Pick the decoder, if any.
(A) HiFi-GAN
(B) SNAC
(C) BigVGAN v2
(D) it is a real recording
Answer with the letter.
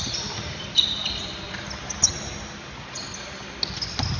D